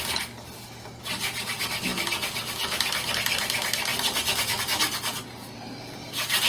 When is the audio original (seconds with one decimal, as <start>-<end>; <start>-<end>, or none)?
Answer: 0.0-6.5